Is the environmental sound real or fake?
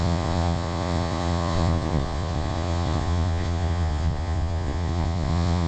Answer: fake